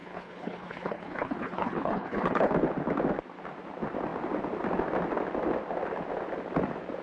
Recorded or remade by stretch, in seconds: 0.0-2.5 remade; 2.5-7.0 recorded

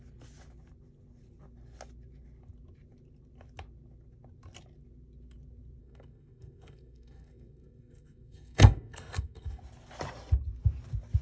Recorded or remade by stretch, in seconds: 0.0-5.8 recorded; 5.8-9.6 remade; 9.6-11.2 recorded

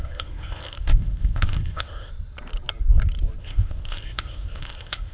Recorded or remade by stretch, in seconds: 0.0-2.1 remade; 2.1-3.4 recorded; 3.4-5.1 remade

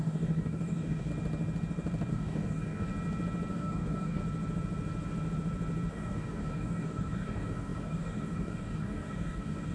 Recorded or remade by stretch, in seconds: 0.0-1.1 remade; 1.1-2.1 recorded; 2.1-2.9 remade; 2.9-3.5 recorded; 3.5-4.2 remade; 4.2-5.9 recorded; 5.9-9.7 remade